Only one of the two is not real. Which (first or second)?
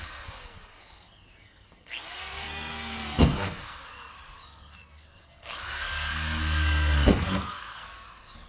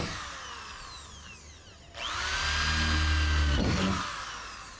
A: first